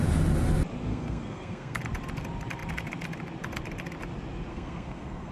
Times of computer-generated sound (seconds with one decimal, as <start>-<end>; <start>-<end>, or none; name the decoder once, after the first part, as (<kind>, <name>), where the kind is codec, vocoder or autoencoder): 0.9-1.8 (codec, SNAC); 4.5-5.3